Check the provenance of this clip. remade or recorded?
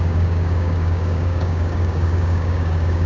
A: remade